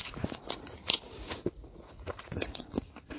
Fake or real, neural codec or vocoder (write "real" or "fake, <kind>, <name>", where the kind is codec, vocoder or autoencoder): fake, vocoder, Vocos